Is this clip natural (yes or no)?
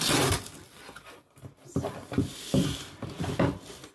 yes